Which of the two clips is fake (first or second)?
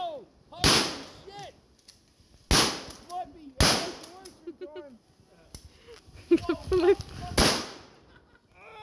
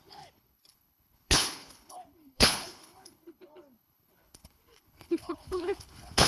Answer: second